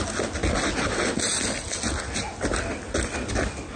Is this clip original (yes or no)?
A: yes